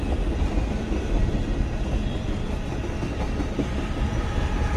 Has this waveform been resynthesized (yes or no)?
no